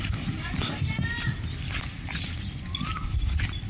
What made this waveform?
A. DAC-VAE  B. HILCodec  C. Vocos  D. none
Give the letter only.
D